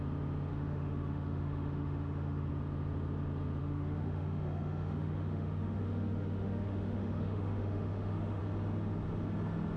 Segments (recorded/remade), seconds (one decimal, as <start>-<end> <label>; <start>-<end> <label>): 0.0-0.5 recorded; 0.5-2.5 remade; 2.5-3.6 recorded; 3.6-8.4 remade; 8.4-9.8 recorded